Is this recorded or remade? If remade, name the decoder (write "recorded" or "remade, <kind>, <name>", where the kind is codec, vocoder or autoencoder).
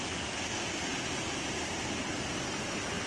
remade, vocoder, BigVGAN v2